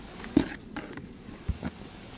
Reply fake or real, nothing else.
fake